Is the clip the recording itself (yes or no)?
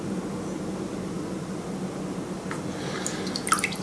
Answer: yes